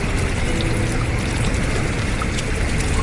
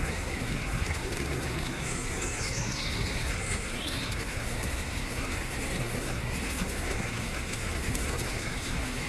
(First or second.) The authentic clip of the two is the first